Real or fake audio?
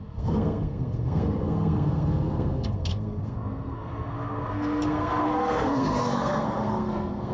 fake